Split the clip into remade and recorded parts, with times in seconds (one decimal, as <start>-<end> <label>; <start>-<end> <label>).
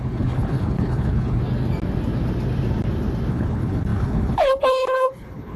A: 0.0-1.4 remade; 1.4-3.3 recorded; 3.3-5.6 remade